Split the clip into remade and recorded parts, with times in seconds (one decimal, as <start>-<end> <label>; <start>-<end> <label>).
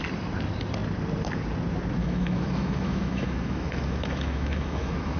0.0-2.0 recorded; 2.0-5.2 remade